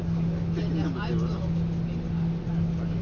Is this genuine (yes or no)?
yes